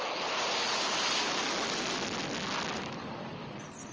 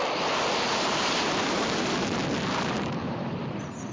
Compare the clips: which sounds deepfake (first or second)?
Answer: second